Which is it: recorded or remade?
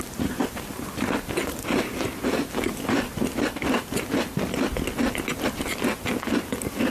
recorded